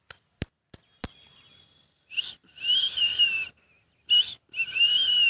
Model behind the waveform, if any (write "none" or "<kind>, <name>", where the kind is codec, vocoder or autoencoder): none